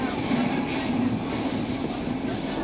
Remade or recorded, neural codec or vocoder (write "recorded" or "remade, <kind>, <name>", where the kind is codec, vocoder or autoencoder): recorded